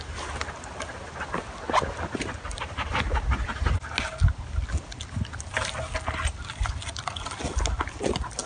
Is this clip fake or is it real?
real